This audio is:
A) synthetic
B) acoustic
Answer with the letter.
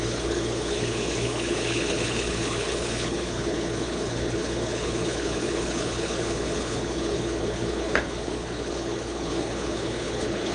A